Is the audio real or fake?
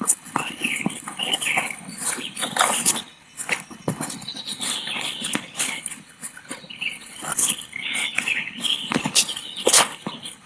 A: fake